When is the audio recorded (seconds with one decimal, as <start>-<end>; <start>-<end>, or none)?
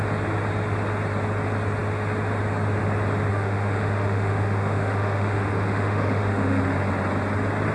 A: 0.0-3.3; 6.6-7.7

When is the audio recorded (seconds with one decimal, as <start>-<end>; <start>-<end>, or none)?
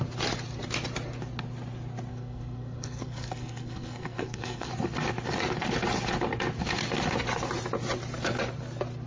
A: 0.0-2.1; 4.7-9.1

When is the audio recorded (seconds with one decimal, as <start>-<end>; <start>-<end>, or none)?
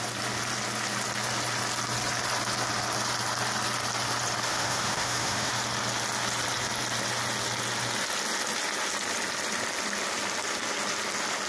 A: 0.0-4.5; 5.5-11.5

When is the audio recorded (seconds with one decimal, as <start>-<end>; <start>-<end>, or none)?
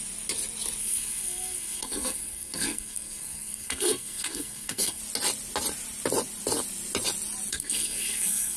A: 0.0-0.8; 5.0-7.5